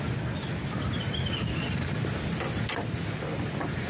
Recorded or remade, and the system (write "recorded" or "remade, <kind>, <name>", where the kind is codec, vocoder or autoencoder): recorded